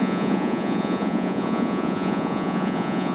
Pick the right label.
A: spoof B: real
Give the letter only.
A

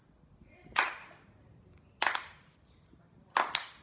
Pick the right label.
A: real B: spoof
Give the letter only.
A